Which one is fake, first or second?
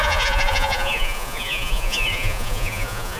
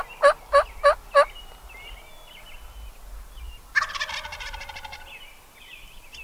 first